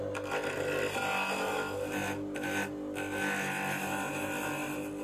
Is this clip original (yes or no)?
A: yes